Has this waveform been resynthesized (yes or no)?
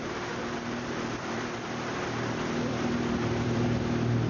yes